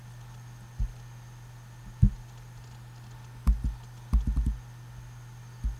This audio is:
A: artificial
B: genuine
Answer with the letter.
B